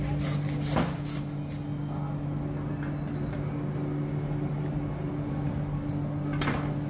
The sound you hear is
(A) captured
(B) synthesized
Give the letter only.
A